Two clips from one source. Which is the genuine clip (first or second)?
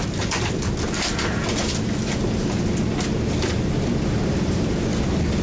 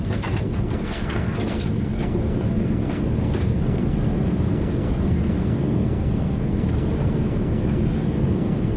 first